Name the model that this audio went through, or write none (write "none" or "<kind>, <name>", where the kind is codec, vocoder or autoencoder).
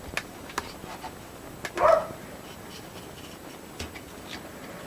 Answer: none